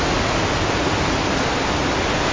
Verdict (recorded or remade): recorded